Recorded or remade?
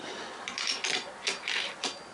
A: recorded